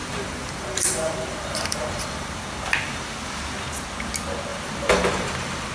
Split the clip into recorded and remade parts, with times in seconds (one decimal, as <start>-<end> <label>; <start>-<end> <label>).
0.0-3.4 remade; 3.4-4.5 recorded; 4.5-5.7 remade